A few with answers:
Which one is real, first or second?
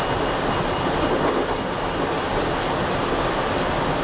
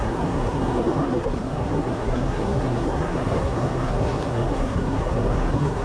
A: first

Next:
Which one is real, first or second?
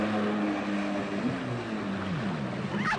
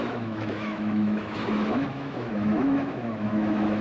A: first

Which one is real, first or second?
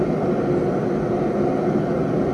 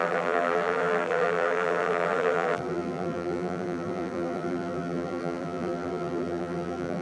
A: first